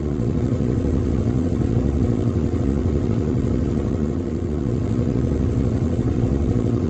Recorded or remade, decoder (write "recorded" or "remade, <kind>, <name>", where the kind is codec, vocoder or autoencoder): remade, vocoder, WaveNeXt